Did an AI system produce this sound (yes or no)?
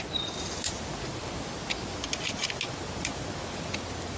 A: no